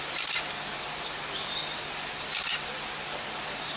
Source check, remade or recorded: recorded